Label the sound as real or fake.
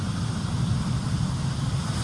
real